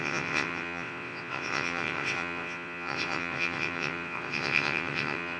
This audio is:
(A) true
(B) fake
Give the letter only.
B